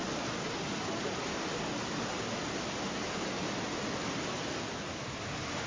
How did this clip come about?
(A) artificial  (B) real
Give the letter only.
B